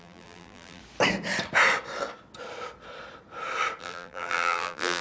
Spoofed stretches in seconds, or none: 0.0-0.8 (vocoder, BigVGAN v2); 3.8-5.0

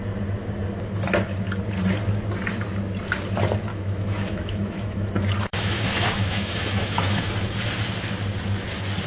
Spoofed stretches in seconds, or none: 3.7-5.1 (autoencoder, DAC-VAE); 5.5-7.3